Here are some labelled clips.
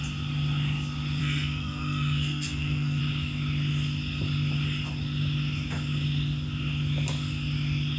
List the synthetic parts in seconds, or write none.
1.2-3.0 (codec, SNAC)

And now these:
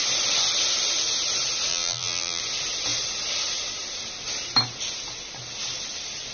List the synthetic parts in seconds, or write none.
1.7-2.4 (vocoder, BigVGAN v2)

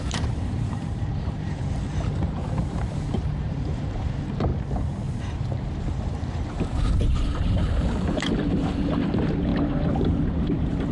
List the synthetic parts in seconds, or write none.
0.0-4.5 (vocoder, BigVGAN v2); 5.2-9.5; 10.3-10.9